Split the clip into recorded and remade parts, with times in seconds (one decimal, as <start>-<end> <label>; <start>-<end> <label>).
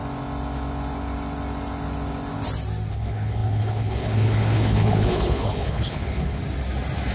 0.0-2.9 recorded; 2.9-6.4 remade; 6.4-7.1 recorded